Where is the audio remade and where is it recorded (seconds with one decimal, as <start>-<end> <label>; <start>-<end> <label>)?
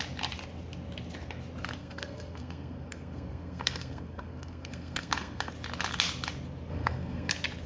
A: 0.0-1.8 recorded; 1.8-5.5 remade; 5.5-6.7 recorded; 6.7-7.3 remade; 7.3-7.7 recorded